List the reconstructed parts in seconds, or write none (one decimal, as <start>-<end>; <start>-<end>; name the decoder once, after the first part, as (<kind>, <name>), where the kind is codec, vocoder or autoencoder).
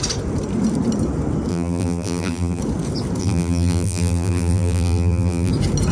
1.5-2.6 (vocoder, BigVGAN v2); 3.2-5.5